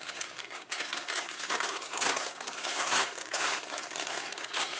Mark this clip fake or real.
fake